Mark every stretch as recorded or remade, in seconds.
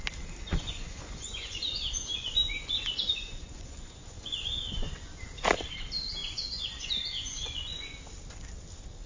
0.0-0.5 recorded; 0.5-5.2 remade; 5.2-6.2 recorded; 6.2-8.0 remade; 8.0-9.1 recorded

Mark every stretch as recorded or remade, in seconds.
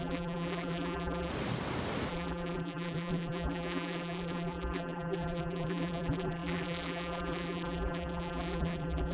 0.0-1.3 remade; 1.3-2.1 recorded; 2.1-9.1 remade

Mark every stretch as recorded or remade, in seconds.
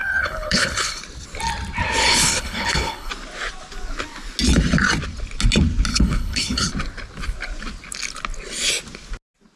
0.0-1.0 remade; 1.0-2.0 recorded; 2.0-3.1 remade; 3.1-5.9 recorded; 5.9-6.7 remade; 6.7-9.6 recorded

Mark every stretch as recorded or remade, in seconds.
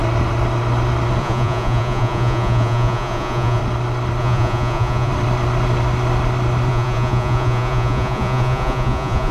0.0-1.2 recorded; 1.2-3.6 remade; 3.6-4.2 recorded; 4.2-5.1 remade; 5.1-6.7 recorded; 6.7-9.3 remade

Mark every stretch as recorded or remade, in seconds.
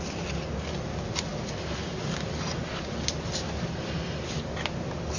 0.0-5.2 recorded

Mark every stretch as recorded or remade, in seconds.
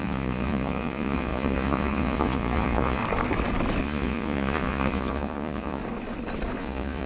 0.0-3.0 remade; 3.0-3.8 recorded; 3.8-5.8 remade; 5.8-6.6 recorded; 6.6-7.1 remade